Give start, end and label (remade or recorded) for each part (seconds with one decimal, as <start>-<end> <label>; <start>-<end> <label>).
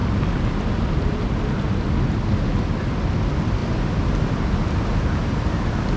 0.0-3.6 recorded; 3.6-4.1 remade; 4.1-6.0 recorded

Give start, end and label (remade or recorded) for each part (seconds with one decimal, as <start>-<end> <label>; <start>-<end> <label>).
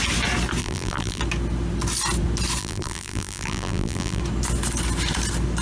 0.0-0.6 recorded; 0.6-1.2 remade; 1.2-2.6 recorded; 2.6-4.2 remade; 4.2-5.6 recorded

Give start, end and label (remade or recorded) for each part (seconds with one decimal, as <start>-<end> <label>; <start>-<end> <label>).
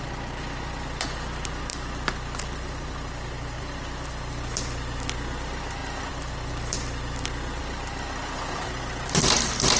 0.0-1.7 recorded; 1.7-4.5 remade; 4.5-5.8 recorded; 5.8-6.5 remade; 6.5-7.6 recorded; 7.6-8.8 remade; 8.8-9.8 recorded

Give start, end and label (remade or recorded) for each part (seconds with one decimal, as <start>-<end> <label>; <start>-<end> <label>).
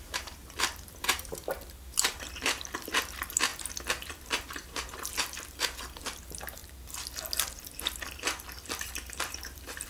0.0-3.5 remade; 3.5-4.1 recorded; 4.1-6.6 remade; 6.6-7.4 recorded; 7.4-9.9 remade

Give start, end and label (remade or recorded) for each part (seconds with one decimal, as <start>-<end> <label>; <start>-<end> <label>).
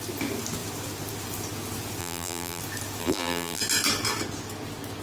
0.0-2.0 recorded; 2.0-2.6 remade; 2.6-3.0 recorded; 3.0-3.6 remade; 3.6-5.0 recorded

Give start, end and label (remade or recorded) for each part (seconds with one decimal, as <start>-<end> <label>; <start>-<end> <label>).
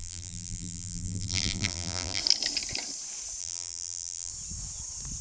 0.0-2.2 remade; 2.2-3.4 recorded; 3.4-4.3 remade; 4.3-5.2 recorded